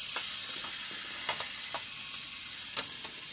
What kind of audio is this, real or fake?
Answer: real